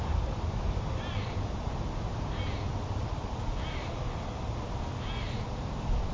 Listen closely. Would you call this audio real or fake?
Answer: fake